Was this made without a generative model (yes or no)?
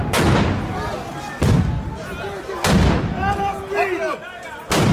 yes